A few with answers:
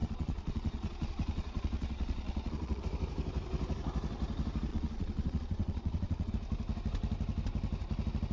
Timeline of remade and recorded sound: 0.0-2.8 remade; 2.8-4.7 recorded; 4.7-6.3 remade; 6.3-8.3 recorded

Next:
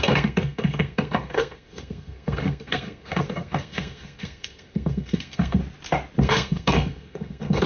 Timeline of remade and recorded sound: 0.0-5.6 remade; 5.6-6.2 recorded; 6.2-7.7 remade

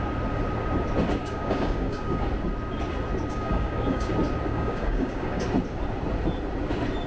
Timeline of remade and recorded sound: 0.0-1.2 recorded; 1.2-2.3 remade; 2.3-3.3 recorded; 3.3-4.1 remade; 4.1-4.5 recorded; 4.5-5.4 remade; 5.4-7.1 recorded

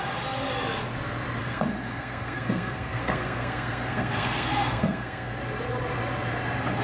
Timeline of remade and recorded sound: 0.0-1.4 recorded; 1.4-5.4 remade; 5.4-6.8 recorded